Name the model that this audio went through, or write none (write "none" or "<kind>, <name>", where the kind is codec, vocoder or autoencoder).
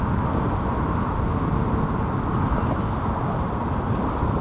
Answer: none